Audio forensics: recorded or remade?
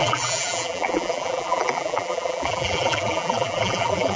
remade